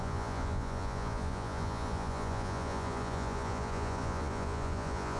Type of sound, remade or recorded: remade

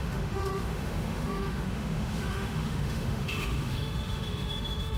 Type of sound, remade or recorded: remade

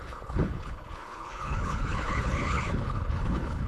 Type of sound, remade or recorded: remade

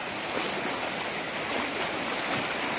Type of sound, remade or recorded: recorded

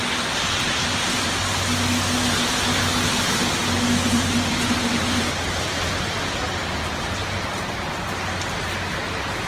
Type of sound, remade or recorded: recorded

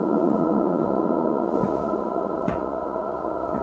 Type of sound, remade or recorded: remade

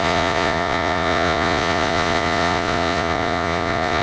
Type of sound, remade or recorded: remade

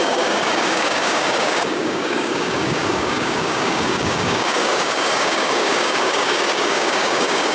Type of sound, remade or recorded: remade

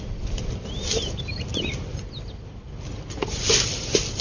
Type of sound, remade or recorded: recorded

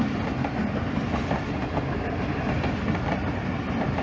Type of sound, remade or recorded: recorded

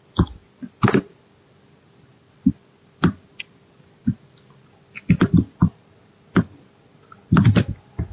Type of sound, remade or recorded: recorded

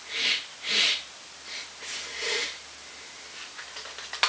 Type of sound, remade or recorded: recorded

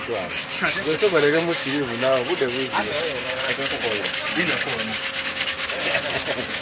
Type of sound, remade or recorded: remade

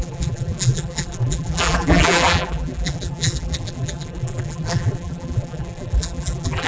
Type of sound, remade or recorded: remade